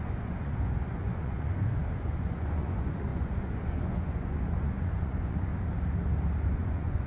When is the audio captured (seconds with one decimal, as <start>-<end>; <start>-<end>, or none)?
5.5-6.5